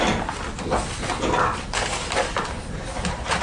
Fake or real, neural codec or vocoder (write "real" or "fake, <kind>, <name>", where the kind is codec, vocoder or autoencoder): fake, vocoder, BigVGAN v2